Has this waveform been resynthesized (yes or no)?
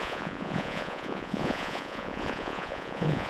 yes